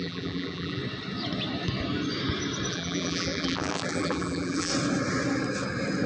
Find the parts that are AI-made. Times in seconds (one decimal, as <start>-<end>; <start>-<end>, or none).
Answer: 0.0-0.8; 2.7-4.7